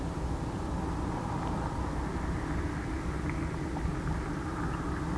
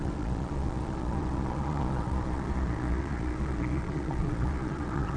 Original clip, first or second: first